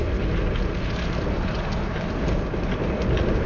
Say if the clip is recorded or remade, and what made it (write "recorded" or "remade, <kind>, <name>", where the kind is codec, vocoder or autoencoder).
recorded